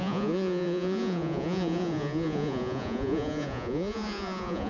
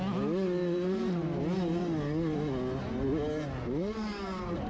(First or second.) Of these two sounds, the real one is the second